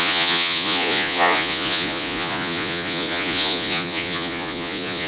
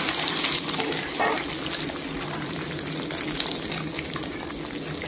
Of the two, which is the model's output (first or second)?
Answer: first